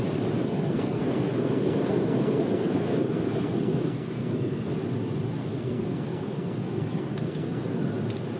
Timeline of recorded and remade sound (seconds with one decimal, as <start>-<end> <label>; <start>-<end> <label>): 0.0-0.4 recorded; 0.4-4.7 remade; 4.7-5.4 recorded; 5.4-7.8 remade; 7.8-8.4 recorded